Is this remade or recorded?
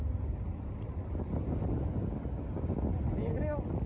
recorded